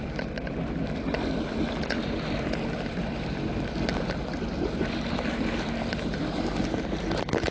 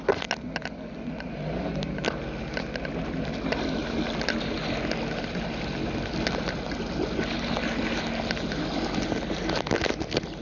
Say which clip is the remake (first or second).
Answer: first